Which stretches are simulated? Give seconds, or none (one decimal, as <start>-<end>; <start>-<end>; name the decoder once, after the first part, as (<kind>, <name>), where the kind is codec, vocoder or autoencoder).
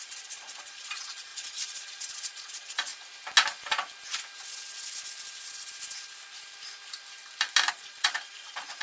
0.0-2.9 (vocoder, Vocos); 7.7-8.8